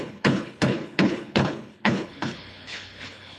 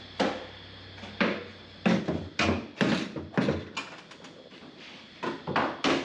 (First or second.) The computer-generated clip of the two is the first